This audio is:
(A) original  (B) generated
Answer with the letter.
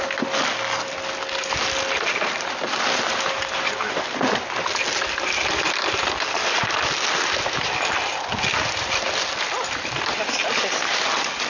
A